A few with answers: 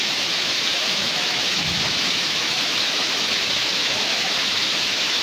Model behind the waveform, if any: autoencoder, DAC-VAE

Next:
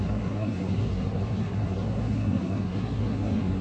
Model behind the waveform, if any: codec, SNAC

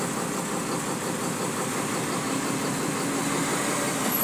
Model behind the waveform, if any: none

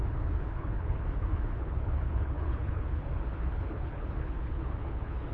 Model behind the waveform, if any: codec, HILCodec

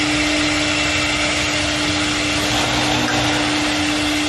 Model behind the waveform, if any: none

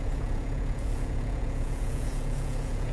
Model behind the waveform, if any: vocoder, Vocos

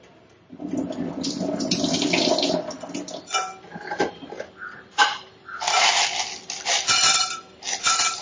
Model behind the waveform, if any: vocoder, BigVGAN v2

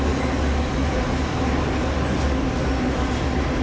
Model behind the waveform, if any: none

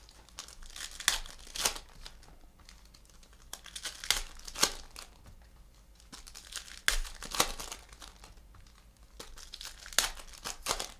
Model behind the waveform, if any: none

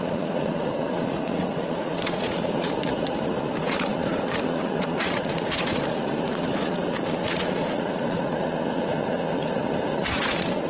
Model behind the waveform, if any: vocoder, Vocos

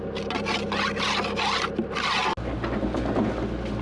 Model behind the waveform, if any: none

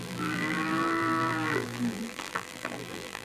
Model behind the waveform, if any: vocoder, BigVGAN v2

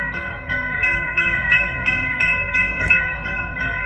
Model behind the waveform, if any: codec, SNAC